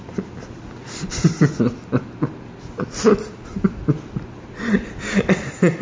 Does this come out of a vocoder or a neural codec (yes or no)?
no